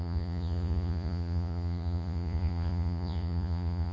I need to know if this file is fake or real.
fake